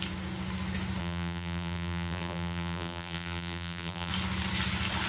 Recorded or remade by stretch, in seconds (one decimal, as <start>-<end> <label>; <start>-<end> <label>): 0.0-1.0 recorded; 1.0-4.1 remade; 4.1-5.1 recorded